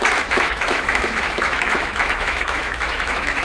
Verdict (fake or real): fake